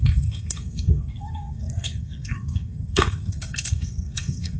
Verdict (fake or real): fake